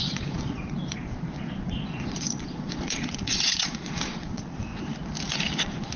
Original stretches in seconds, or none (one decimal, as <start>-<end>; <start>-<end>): 4.7-5.6